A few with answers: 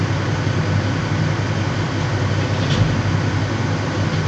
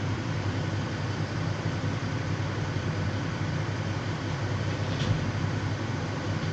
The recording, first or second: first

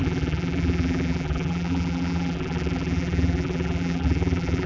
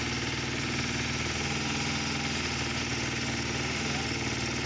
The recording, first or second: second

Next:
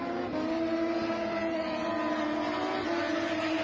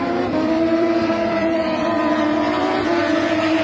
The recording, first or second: first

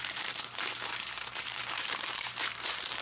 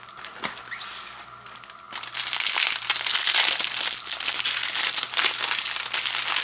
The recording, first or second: second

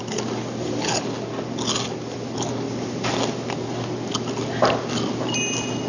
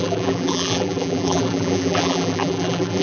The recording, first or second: first